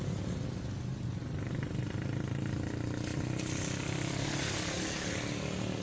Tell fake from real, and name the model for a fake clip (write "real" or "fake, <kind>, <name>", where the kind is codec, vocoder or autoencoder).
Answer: real